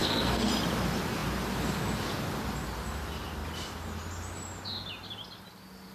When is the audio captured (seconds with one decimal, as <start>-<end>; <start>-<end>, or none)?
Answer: 0.5-5.9